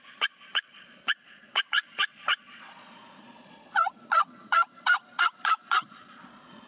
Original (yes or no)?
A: no